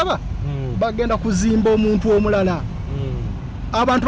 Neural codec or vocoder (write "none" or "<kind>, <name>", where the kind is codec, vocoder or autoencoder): none